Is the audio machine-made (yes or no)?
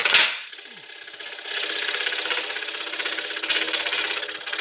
no